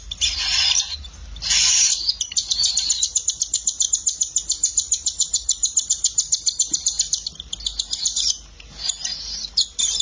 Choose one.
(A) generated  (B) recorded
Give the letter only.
B